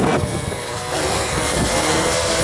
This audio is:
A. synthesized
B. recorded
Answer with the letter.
A